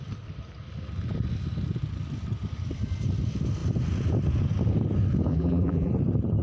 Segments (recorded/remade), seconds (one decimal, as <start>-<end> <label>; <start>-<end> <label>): 0.0-5.3 recorded; 5.3-5.9 remade; 5.9-6.4 recorded